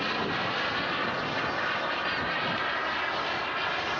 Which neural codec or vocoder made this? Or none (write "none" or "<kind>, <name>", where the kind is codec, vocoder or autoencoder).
none